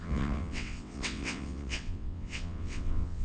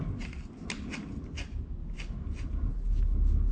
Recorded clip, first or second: second